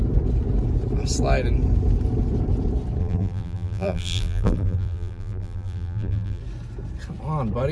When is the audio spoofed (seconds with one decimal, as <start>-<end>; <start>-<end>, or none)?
3.0-6.4